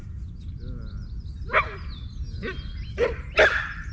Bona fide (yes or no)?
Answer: yes